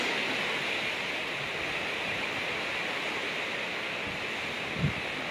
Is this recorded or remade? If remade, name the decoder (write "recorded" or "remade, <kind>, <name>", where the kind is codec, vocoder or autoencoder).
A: recorded